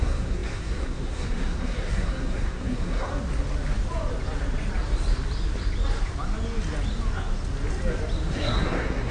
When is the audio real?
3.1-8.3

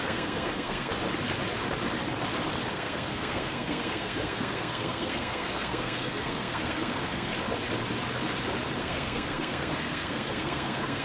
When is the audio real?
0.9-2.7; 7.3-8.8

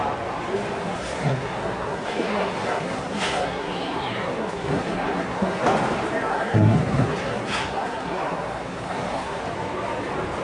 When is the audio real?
0.0-0.8; 5.6-6.3; 9.4-10.4

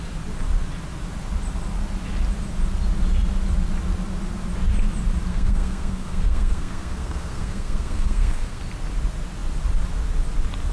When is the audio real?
0.0-5.3; 8.6-10.7